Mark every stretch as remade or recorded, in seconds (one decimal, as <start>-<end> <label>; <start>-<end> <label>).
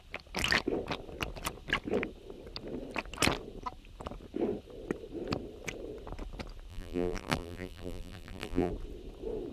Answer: 0.0-6.7 recorded; 6.7-8.7 remade; 8.7-9.5 recorded